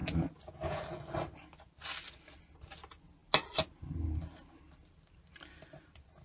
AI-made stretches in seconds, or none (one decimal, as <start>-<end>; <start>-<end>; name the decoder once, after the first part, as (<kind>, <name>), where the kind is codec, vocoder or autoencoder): 0.0-1.0 (vocoder, Vocos)